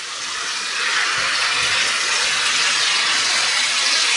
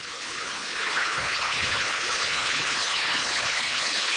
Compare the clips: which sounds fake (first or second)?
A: second